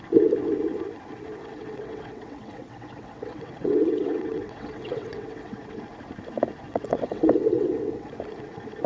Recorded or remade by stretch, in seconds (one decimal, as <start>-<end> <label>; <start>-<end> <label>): 0.0-1.4 recorded; 1.4-5.8 remade; 5.8-6.7 recorded; 6.7-8.1 remade; 8.1-8.9 recorded